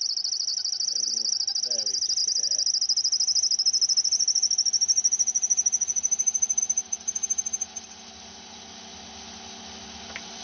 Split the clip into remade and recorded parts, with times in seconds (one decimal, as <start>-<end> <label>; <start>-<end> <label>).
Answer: 0.0-10.4 recorded